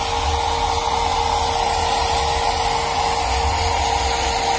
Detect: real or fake real